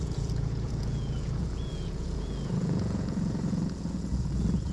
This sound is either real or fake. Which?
fake